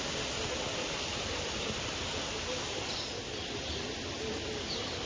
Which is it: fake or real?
real